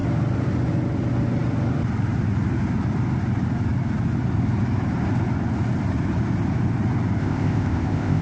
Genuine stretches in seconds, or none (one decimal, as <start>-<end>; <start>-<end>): 0.0-7.2